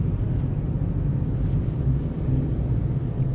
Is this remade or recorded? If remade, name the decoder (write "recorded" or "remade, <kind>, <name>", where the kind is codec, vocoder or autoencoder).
remade, vocoder, BigVGAN v2